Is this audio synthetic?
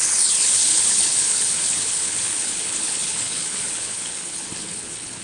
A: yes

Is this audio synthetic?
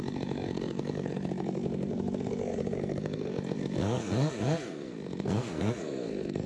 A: yes